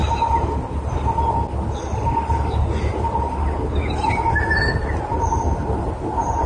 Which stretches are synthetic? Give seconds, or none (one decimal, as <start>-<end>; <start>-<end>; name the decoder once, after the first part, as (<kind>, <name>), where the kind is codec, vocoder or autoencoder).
none